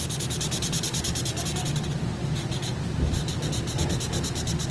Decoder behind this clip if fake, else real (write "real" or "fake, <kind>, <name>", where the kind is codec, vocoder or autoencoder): real